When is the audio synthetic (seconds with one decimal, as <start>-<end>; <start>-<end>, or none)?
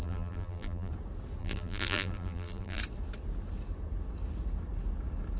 0.0-0.9; 1.4-2.8